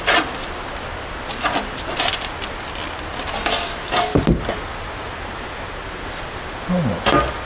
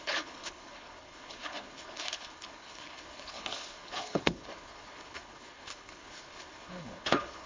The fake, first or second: second